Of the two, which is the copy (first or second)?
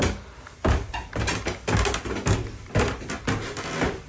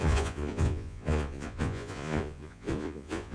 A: second